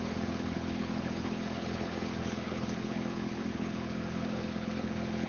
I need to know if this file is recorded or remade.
remade